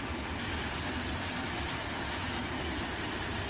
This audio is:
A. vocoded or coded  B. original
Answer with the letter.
B